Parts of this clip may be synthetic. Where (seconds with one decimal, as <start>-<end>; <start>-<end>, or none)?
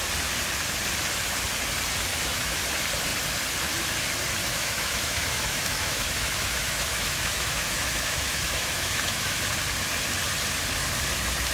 2.1-2.6; 4.4-9.3